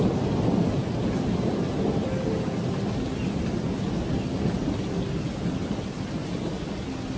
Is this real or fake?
real